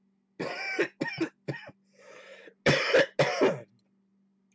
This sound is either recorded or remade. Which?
recorded